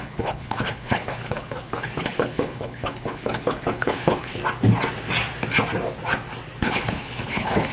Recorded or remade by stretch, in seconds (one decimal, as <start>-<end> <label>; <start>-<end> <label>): 0.0-4.4 remade; 4.4-6.6 recorded; 6.6-7.7 remade